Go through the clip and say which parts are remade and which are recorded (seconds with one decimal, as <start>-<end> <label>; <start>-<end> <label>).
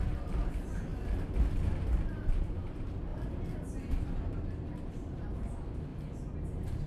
0.0-0.9 remade; 0.9-1.5 recorded; 1.5-3.1 remade; 3.1-3.9 recorded; 3.9-5.9 remade; 5.9-6.9 recorded